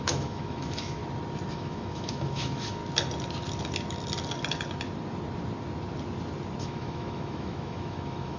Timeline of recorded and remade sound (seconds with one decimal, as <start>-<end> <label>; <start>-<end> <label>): 0.0-1.0 remade; 1.0-1.5 recorded; 1.5-2.8 remade; 2.8-6.6 recorded; 6.6-8.4 remade